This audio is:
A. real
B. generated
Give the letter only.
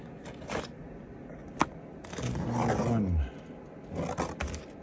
A